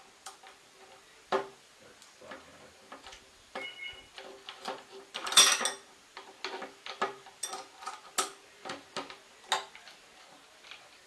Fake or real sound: real